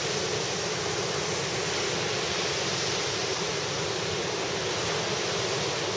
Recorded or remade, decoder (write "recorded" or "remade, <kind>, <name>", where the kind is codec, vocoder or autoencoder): recorded